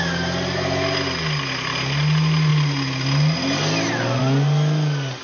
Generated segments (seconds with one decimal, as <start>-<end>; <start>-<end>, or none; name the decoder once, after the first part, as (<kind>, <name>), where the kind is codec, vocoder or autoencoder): none